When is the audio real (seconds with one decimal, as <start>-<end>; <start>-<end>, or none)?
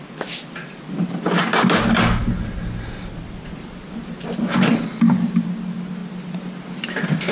0.0-7.3